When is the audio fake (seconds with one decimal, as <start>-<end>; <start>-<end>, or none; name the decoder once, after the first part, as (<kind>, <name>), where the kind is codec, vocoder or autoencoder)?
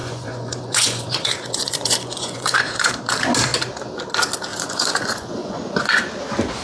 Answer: 0.0-2.9 (vocoder, Vocos); 4.5-6.0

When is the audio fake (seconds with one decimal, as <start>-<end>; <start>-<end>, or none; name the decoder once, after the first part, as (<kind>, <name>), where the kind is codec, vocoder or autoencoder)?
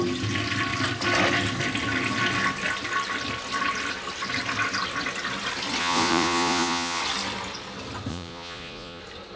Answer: 5.8-7.0 (vocoder, Vocos); 8.1-9.0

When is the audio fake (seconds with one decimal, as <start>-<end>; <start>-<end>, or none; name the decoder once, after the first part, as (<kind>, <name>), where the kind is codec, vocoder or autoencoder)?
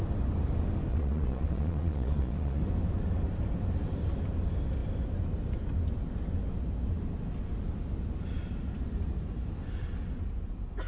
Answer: 0.9-2.6 (vocoder, Vocos)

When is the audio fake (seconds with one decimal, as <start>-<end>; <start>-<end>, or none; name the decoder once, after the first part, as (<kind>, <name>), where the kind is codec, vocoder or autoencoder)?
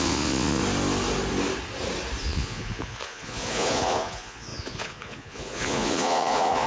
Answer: 0.0-0.6 (vocoder, Vocos); 2.2-6.7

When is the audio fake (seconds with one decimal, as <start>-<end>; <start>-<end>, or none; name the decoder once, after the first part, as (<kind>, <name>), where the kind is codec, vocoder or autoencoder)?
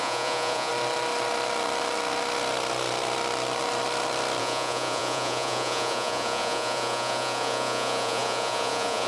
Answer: 0.0-0.7 (vocoder, Vocos); 4.4-9.1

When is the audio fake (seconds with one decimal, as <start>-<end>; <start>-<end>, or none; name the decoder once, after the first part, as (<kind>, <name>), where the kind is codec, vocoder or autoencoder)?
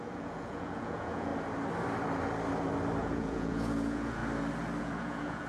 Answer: 0.0-1.3 (vocoder, Vocos); 3.0-4.2; 4.8-5.5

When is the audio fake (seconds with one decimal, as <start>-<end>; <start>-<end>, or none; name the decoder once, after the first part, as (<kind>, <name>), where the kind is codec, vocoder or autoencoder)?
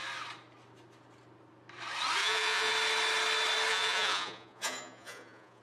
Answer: 2.2-2.7 (vocoder, Vocos); 3.7-5.6